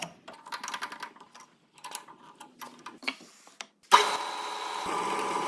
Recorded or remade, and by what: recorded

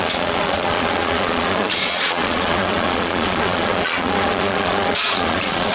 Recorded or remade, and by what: remade, vocoder, Vocos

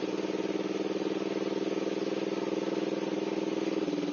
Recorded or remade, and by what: recorded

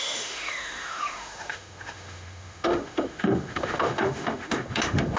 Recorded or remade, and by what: remade, autoencoder, DAC-VAE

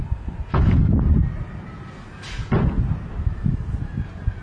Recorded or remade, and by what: recorded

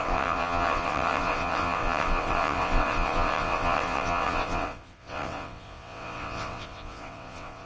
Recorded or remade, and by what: remade, vocoder, WaveNeXt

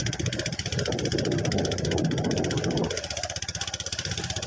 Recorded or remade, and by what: recorded